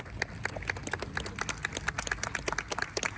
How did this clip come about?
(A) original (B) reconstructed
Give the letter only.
A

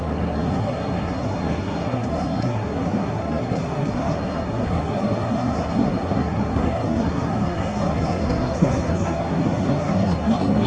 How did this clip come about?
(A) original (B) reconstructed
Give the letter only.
B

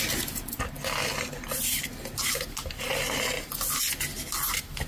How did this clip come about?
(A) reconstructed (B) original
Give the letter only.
B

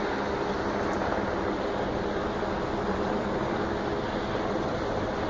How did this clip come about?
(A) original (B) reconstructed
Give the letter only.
A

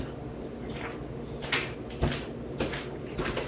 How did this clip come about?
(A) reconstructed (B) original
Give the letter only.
B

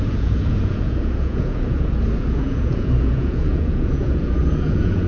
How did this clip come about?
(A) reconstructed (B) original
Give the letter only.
A